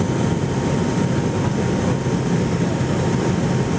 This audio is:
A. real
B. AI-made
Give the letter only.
A